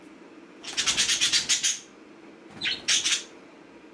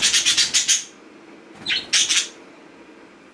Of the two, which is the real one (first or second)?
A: second